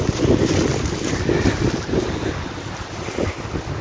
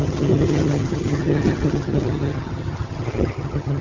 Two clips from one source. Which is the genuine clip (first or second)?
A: first